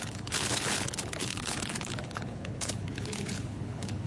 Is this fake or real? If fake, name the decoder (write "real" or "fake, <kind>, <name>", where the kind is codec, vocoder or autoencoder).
fake, codec, HILCodec